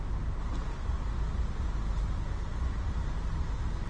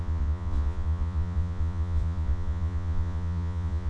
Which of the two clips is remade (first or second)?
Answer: second